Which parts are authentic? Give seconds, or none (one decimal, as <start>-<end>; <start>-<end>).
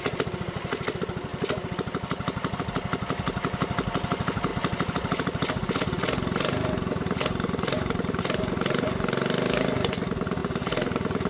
0.0-11.3